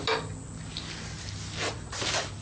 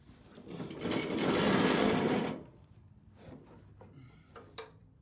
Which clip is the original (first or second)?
first